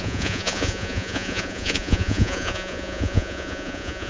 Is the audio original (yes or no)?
no